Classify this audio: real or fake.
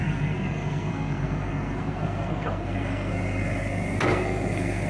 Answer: fake